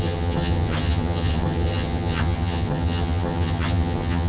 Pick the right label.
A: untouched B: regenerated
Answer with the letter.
B